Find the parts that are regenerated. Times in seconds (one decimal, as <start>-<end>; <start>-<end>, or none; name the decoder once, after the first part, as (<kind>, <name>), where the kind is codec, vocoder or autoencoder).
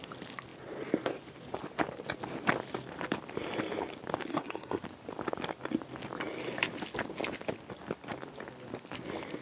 4.3-4.8 (codec, SNAC)